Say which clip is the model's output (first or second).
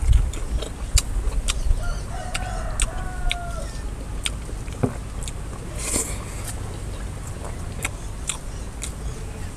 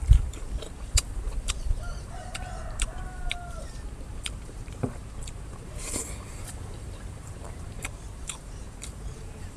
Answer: second